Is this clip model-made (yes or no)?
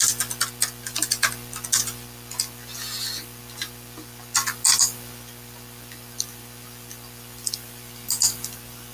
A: no